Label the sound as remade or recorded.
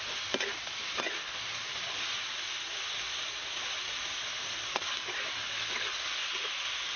recorded